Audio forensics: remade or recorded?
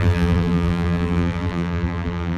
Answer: remade